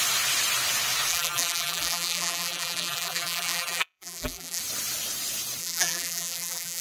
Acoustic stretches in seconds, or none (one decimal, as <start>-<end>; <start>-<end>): 0.0-1.1; 4.6-5.6